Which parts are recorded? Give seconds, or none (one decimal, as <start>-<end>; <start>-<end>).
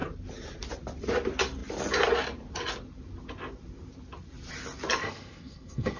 0.0-5.0